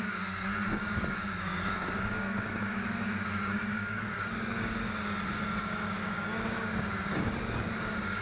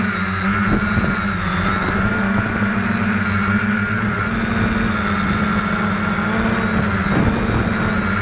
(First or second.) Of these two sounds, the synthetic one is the first